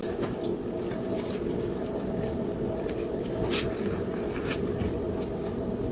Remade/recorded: recorded